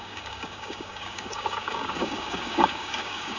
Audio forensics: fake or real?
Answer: fake